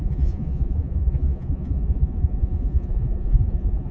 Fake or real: fake